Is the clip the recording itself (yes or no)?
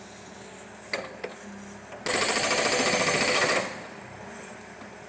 yes